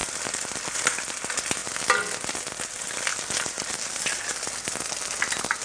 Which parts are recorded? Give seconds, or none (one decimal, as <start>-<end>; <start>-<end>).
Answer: 0.0-3.1; 4.5-5.6